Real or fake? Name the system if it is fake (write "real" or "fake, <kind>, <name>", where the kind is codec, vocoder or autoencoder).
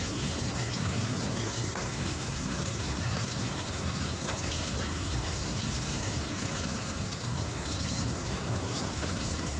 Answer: fake, codec, SNAC